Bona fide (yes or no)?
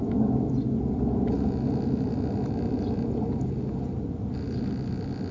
yes